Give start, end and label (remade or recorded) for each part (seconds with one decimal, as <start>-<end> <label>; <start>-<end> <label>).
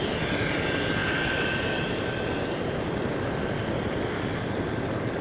0.0-5.2 recorded